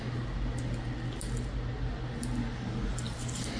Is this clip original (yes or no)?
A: yes